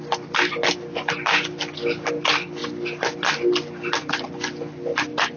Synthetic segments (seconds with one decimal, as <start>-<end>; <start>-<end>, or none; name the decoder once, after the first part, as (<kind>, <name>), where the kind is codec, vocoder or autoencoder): none